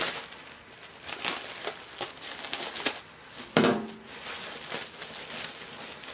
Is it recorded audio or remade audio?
recorded